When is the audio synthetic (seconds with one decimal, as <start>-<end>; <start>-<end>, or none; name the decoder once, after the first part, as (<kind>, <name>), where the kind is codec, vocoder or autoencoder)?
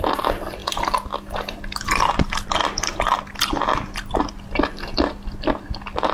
none